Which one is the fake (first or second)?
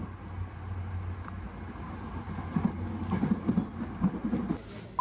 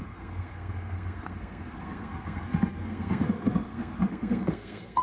second